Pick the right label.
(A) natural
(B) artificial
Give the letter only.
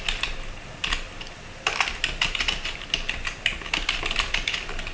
A